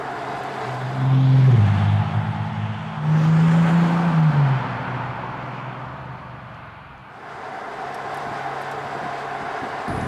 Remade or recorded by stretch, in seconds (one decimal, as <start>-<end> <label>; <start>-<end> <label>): 0.0-10.1 recorded